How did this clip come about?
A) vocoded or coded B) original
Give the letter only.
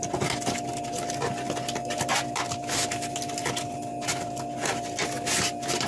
B